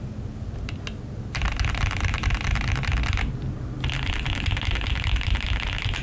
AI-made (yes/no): no